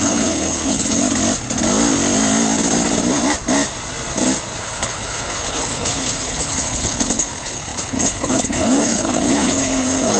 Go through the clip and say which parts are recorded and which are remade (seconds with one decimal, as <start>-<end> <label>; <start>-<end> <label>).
0.0-1.0 remade; 1.0-4.6 recorded; 4.6-10.2 remade

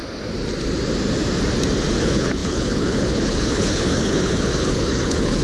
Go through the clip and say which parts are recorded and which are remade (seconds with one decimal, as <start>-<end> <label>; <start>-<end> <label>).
0.0-2.0 recorded; 2.0-5.4 remade